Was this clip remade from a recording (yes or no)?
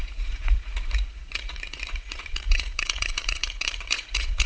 yes